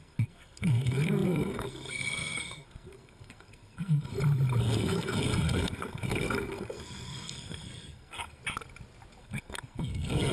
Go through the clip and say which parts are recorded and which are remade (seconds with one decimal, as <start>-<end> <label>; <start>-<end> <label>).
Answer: 0.0-4.1 remade; 4.1-4.6 recorded; 4.6-8.4 remade; 8.4-9.2 recorded; 9.2-10.3 remade